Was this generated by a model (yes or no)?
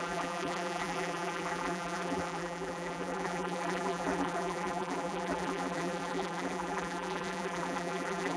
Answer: yes